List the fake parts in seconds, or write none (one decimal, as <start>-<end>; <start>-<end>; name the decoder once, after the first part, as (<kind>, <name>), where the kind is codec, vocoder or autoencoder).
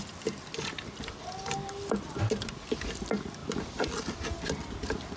none